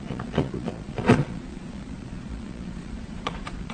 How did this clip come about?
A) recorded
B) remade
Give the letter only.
B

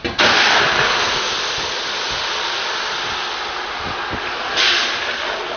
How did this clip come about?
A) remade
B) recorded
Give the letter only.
B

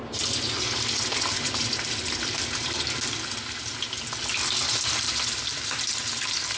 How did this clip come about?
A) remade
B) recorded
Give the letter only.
B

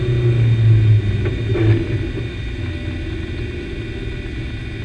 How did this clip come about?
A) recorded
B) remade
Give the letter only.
A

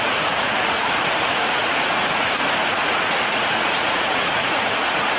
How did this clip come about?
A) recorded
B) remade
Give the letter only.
B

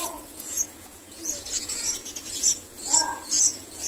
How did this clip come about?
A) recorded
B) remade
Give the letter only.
B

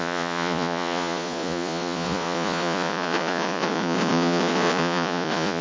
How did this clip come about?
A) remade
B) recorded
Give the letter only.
A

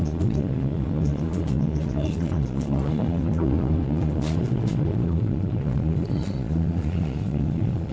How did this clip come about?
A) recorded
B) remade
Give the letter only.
B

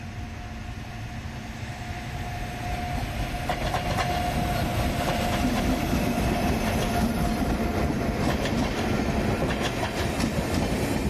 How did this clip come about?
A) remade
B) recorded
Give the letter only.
B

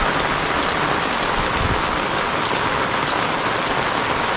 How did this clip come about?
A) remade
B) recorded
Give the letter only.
B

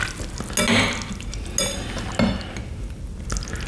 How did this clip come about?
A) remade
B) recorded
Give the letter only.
B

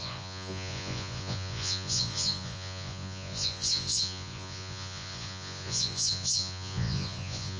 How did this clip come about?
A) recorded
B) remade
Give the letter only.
B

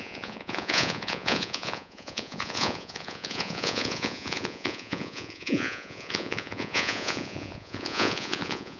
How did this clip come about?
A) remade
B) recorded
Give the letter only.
A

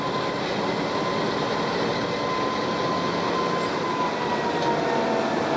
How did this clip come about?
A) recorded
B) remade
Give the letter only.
A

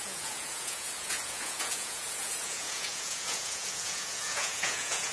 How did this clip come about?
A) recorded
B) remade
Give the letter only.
B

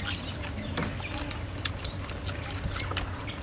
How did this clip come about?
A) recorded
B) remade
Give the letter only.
A